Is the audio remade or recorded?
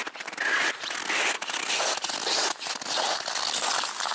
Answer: recorded